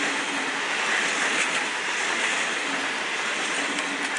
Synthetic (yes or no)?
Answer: no